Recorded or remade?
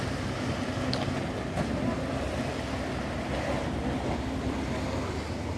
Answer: recorded